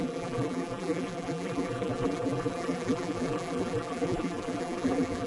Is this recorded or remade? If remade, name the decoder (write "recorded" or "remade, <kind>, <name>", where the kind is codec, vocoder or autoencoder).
remade, vocoder, BigVGAN v2